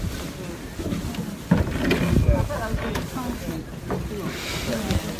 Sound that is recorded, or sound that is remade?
recorded